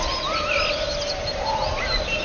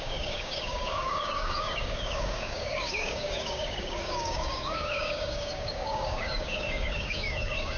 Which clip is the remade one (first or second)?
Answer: second